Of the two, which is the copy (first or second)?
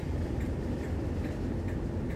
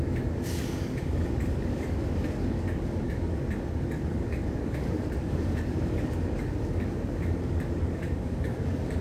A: second